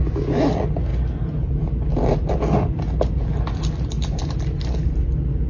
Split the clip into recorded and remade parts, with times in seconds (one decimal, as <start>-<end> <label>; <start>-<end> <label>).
0.0-5.5 recorded